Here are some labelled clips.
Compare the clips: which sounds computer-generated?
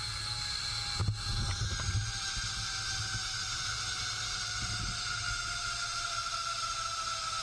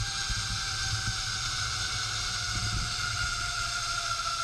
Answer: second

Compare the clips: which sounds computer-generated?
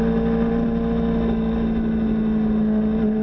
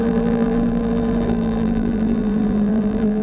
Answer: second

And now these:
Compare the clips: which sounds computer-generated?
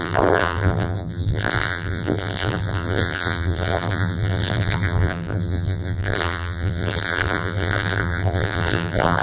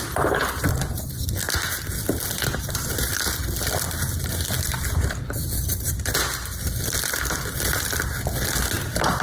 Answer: first